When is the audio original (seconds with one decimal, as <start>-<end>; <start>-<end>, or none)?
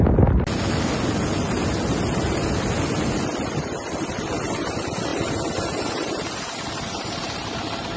0.0-5.1; 7.6-8.0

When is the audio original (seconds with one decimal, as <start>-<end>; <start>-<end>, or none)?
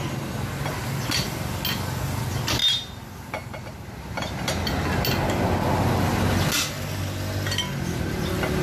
0.0-8.6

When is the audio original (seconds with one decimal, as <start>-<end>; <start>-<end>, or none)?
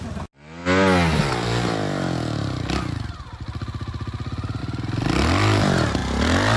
0.0-6.6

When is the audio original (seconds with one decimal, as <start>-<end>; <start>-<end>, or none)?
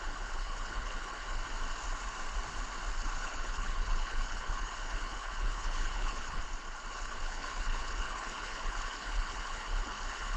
1.4-2.9; 6.4-6.9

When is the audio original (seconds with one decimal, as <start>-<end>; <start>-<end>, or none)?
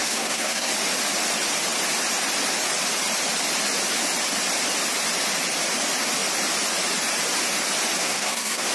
0.7-8.0